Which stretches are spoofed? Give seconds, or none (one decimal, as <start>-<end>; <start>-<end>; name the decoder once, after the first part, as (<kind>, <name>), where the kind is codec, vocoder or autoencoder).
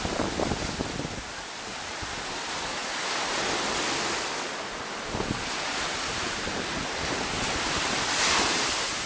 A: none